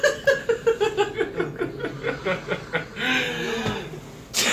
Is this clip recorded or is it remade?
recorded